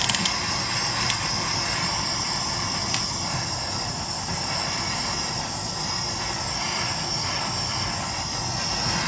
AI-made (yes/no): no